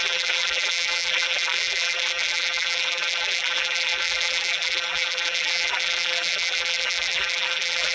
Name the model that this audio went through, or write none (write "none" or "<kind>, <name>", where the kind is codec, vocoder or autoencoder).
vocoder, BigVGAN v2